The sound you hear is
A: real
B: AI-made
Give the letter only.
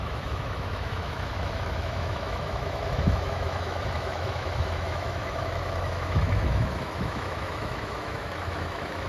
B